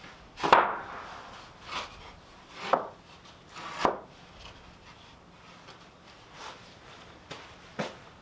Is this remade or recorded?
recorded